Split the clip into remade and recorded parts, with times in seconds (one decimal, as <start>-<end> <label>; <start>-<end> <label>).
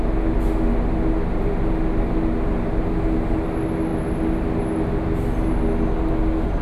0.0-6.6 recorded